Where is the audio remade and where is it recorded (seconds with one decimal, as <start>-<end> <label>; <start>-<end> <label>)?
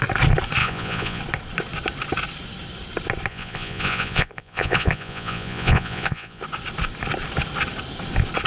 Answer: 0.0-0.6 recorded; 0.6-1.2 remade; 1.2-3.3 recorded; 3.3-6.4 remade; 6.4-8.5 recorded